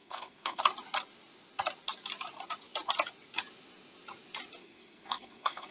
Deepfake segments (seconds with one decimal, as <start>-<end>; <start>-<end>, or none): 0.0-0.6; 4.6-5.7